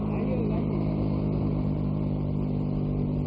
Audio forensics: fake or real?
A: real